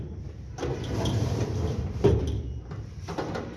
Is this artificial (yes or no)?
no